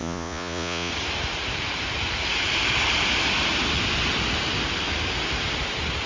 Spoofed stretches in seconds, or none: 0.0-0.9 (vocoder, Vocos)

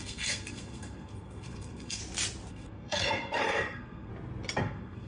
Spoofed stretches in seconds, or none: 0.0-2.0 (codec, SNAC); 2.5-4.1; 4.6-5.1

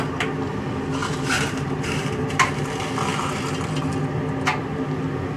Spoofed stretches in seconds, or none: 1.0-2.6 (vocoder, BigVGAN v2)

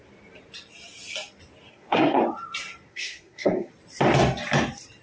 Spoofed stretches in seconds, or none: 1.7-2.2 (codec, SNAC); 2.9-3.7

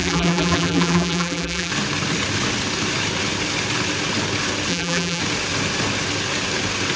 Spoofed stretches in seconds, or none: 0.0-1.7 (vocoder, BigVGAN v2); 4.7-5.2

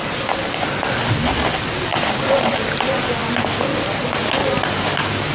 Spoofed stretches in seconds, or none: 0.0-0.9 (vocoder, BigVGAN v2); 1.9-2.9